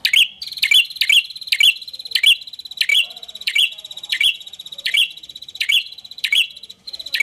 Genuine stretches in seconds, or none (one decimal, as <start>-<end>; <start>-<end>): 0.0-2.9